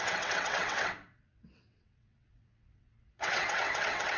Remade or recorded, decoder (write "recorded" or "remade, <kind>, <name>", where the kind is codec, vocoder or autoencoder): remade, vocoder, WaveNeXt